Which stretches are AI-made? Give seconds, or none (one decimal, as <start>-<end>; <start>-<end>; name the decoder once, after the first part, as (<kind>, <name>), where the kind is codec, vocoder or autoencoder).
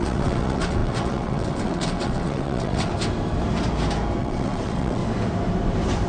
0.0-2.9 (vocoder, WaveNeXt); 4.2-5.0